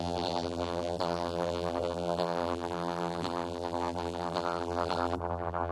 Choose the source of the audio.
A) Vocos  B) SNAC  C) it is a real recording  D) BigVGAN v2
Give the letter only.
D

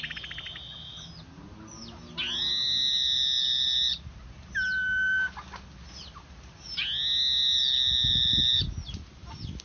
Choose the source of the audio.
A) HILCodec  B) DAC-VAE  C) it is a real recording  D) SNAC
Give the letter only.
C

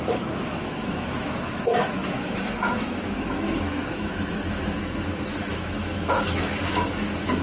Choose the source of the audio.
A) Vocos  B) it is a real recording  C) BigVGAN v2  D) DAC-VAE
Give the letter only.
D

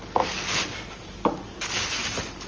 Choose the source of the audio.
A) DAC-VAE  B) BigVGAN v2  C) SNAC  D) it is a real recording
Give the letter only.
D